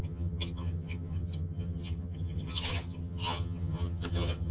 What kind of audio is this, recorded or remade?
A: remade